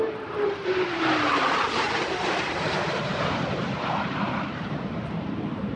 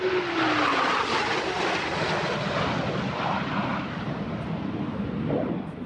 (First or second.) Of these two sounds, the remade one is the first